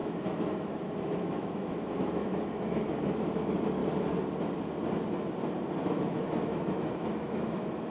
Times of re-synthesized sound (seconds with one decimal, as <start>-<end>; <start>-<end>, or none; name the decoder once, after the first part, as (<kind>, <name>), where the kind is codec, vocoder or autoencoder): 0.0-3.8 (autoencoder, DAC-VAE); 6.0-7.9